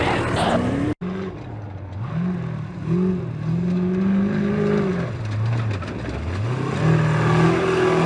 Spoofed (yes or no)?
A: no